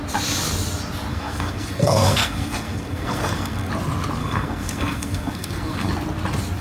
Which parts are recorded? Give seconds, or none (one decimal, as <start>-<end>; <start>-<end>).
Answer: 0.0-1.1; 3.7-4.2; 5.9-6.6